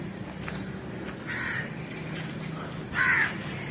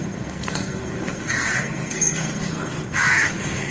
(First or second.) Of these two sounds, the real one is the first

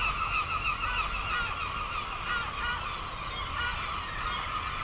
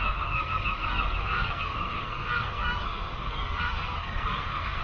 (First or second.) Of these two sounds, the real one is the first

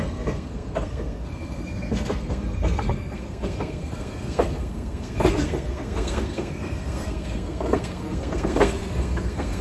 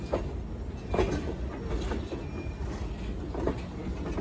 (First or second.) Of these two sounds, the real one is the second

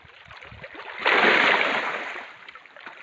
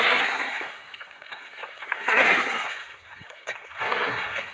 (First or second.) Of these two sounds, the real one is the first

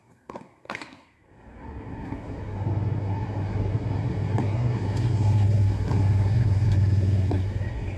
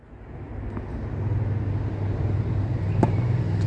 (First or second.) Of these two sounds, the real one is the second